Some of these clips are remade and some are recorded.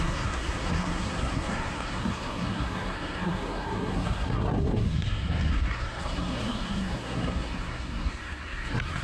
remade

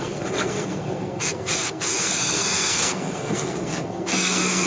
remade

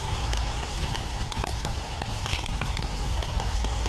remade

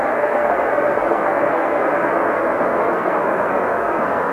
remade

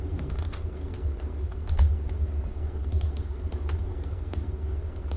remade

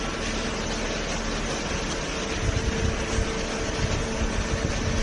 recorded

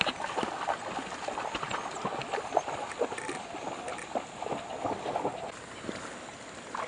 recorded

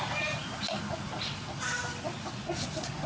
recorded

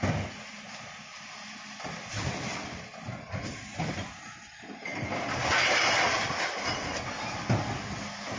recorded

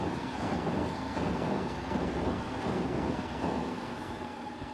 remade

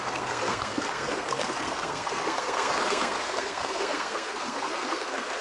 remade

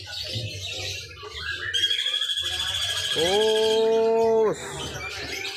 recorded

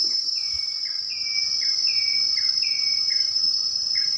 recorded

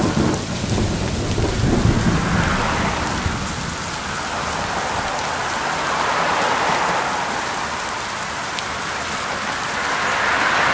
recorded